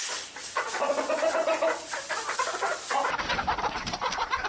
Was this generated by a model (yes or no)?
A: no